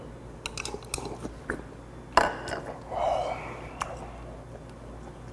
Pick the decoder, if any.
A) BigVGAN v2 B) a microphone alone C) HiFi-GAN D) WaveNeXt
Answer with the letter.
B